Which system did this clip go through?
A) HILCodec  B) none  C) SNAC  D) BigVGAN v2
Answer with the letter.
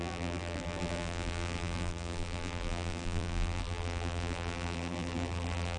D